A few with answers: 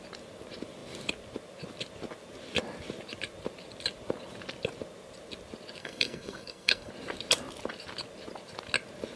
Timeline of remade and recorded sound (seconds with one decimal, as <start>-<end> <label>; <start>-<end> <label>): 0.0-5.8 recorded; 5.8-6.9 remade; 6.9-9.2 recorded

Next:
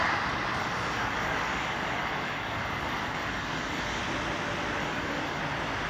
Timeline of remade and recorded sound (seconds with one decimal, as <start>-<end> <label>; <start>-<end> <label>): 0.0-0.6 recorded; 0.6-4.0 remade; 4.0-4.8 recorded; 4.8-5.4 remade; 5.4-5.9 recorded

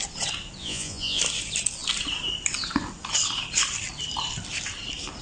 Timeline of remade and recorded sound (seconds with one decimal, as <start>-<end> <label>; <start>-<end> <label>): 0.0-0.6 recorded; 0.6-1.2 remade; 1.2-5.2 recorded

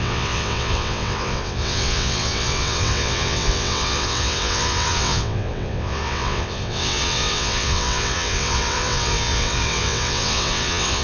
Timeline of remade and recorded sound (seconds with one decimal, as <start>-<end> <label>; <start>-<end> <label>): 0.0-11.0 remade

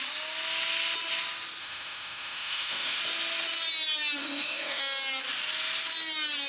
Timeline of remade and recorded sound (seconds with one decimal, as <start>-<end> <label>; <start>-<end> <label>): 0.0-1.6 recorded; 1.6-3.0 remade; 3.0-4.2 recorded; 4.2-4.8 remade; 4.8-6.5 recorded

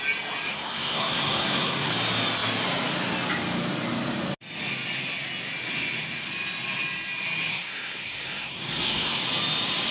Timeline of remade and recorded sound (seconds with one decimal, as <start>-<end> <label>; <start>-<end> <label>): 0.0-0.5 recorded; 0.5-1.9 remade; 1.9-7.5 recorded; 7.5-9.2 remade; 9.2-9.9 recorded

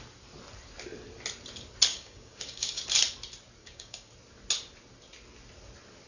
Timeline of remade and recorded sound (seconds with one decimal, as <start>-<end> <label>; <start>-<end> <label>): 0.0-1.9 recorded; 1.9-2.8 remade; 2.8-3.6 recorded; 3.6-4.1 remade; 4.1-6.1 recorded